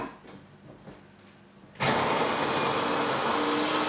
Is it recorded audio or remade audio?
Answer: recorded